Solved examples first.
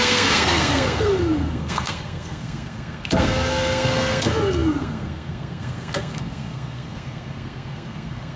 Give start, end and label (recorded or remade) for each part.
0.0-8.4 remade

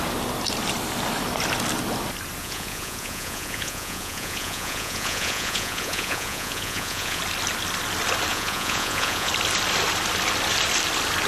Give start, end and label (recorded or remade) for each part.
0.0-2.4 recorded; 2.4-7.2 remade; 7.2-8.3 recorded; 8.3-9.3 remade; 9.3-11.3 recorded